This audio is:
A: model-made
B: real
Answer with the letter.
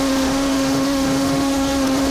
A